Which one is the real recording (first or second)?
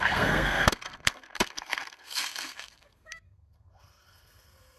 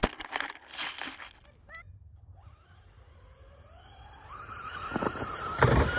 second